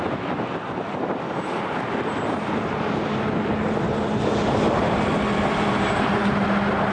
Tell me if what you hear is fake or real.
real